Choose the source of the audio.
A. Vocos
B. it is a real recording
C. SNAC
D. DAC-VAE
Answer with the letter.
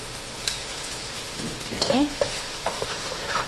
D